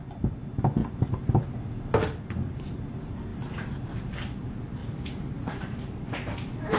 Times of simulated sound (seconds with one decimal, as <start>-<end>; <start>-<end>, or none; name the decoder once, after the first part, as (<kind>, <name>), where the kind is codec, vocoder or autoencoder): 0.8-1.5 (vocoder, BigVGAN v2); 3.3-4.0; 4.8-6.8